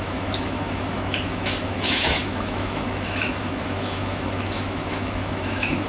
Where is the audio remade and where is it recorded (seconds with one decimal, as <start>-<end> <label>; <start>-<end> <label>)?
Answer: 0.0-5.9 remade